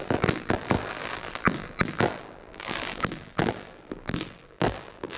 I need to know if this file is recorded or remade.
remade